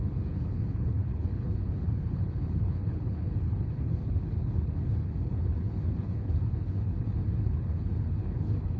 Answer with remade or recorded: remade